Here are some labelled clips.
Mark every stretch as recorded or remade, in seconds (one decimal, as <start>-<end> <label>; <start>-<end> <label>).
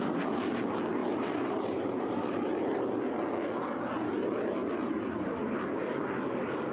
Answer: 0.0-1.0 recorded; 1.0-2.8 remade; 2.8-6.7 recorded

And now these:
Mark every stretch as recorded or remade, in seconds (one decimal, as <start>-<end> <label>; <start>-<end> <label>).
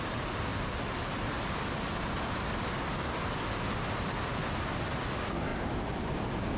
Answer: 0.0-6.6 recorded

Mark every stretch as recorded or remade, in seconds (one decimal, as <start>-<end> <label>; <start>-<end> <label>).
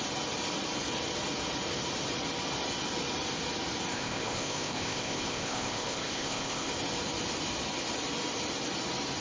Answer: 0.0-3.9 recorded; 3.9-6.7 remade; 6.7-9.2 recorded